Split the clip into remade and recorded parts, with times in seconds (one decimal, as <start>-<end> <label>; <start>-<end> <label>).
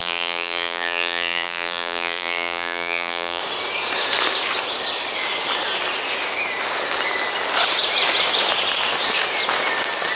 0.0-3.4 remade; 3.4-10.2 recorded